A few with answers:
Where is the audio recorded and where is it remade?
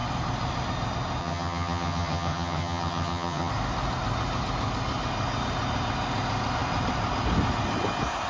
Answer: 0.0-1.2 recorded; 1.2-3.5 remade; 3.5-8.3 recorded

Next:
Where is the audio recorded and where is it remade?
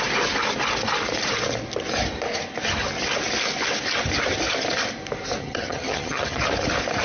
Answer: 0.0-5.4 recorded; 5.4-6.4 remade; 6.4-7.0 recorded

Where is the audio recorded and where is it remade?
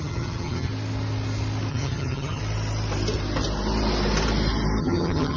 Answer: 0.0-0.7 remade; 0.7-1.7 recorded; 1.7-2.4 remade; 2.4-4.8 recorded; 4.8-5.4 remade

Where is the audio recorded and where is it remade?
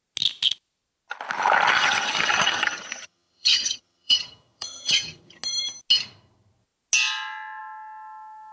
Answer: 0.0-1.7 recorded; 1.7-5.4 remade; 5.4-8.5 recorded